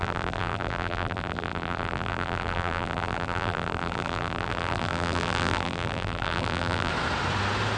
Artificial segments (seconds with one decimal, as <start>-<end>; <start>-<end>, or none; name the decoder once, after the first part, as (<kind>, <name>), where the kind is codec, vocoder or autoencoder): 0.0-6.9 (vocoder, BigVGAN v2)